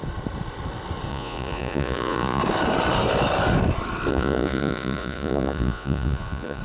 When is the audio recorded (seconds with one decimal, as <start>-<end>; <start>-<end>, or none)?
0.0-1.1; 2.4-4.1